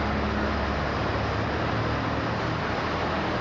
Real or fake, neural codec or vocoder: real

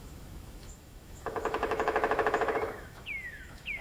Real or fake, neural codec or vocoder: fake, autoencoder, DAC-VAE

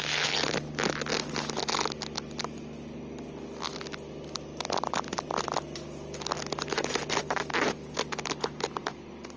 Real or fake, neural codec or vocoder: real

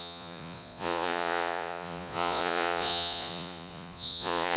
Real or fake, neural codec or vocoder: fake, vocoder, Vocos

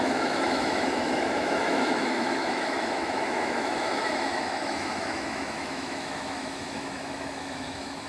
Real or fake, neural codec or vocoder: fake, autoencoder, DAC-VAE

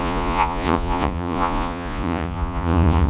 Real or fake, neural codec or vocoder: fake, vocoder, Vocos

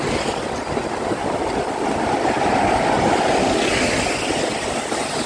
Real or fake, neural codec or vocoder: real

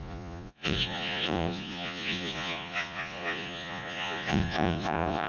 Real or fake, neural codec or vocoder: fake, vocoder, Vocos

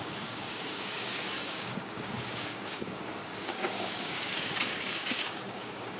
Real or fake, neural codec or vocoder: fake, codec, DAC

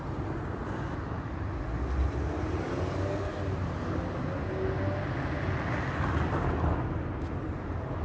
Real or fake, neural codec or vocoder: real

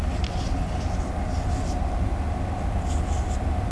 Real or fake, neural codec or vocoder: real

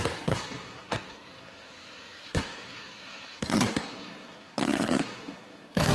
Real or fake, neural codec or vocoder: fake, codec, SNAC